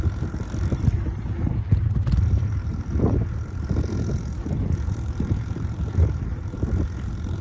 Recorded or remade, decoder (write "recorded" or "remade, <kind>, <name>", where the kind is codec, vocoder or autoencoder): recorded